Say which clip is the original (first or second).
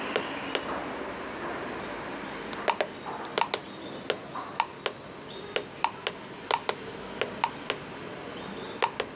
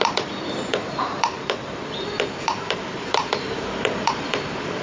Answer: first